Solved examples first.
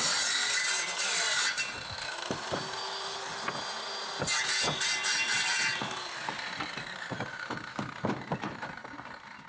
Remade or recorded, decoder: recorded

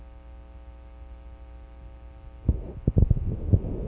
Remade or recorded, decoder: recorded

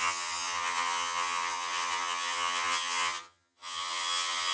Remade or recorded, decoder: remade, vocoder, HiFi-GAN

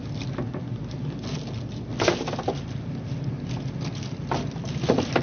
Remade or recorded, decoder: recorded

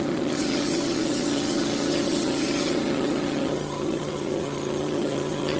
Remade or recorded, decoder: remade, vocoder, HiFi-GAN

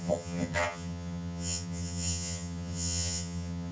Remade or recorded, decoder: remade, vocoder, HiFi-GAN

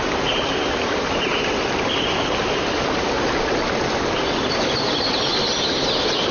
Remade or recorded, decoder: recorded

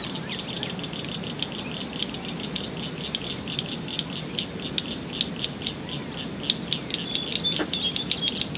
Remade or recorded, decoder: recorded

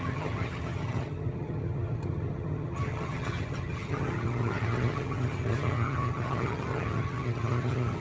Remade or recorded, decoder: remade, vocoder, HiFi-GAN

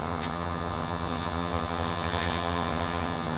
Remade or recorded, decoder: remade, vocoder, HiFi-GAN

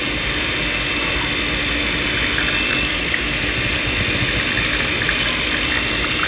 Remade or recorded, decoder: recorded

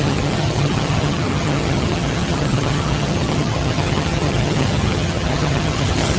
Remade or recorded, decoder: remade, vocoder, HiFi-GAN